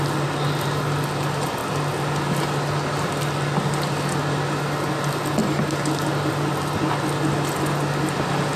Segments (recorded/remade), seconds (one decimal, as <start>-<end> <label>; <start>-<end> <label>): 0.0-8.6 recorded